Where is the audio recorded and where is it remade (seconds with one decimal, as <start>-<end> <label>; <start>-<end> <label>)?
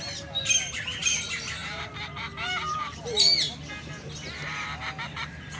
0.0-5.6 recorded